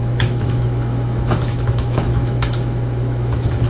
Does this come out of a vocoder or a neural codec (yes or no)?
yes